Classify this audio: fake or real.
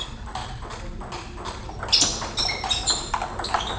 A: real